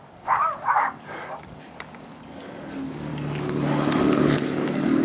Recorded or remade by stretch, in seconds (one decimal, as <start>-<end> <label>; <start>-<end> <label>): 0.0-3.1 remade; 3.1-4.0 recorded; 4.0-5.0 remade